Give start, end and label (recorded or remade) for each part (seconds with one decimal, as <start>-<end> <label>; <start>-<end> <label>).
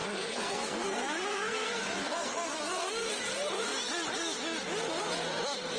0.0-2.9 remade; 2.9-5.8 recorded